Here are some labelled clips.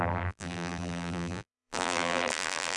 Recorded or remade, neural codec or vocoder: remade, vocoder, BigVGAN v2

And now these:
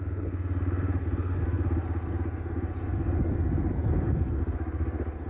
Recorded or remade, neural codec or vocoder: recorded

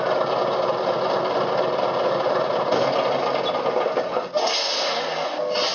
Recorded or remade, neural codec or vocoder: recorded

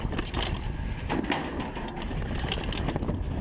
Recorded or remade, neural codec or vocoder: recorded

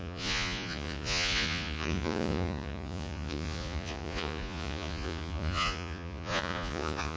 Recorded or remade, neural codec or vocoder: remade, vocoder, Vocos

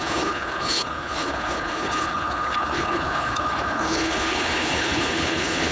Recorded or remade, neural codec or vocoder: remade, codec, HILCodec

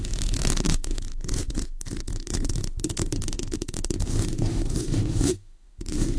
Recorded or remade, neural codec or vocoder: remade, autoencoder, DAC-VAE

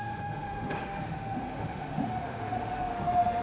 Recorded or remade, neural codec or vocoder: remade, autoencoder, DAC-VAE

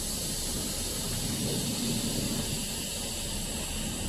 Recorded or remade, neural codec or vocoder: recorded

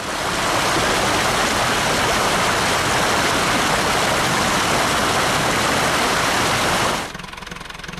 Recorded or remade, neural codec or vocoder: recorded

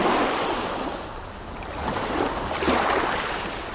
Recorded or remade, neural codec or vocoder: recorded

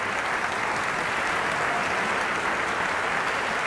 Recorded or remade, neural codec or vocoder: recorded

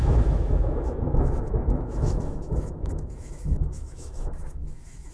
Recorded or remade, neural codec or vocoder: remade, autoencoder, DAC-VAE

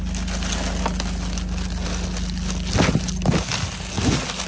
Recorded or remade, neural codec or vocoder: recorded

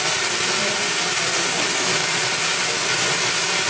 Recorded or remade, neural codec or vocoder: recorded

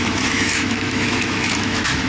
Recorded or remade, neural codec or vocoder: remade, autoencoder, DAC-VAE